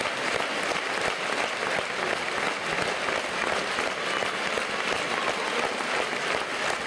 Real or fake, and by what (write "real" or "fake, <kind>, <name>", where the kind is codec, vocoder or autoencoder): real